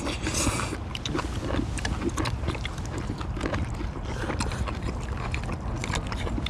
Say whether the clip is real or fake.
real